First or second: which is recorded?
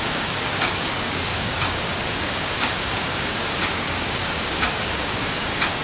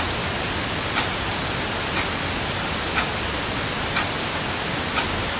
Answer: second